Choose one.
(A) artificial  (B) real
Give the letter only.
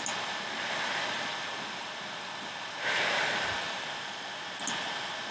B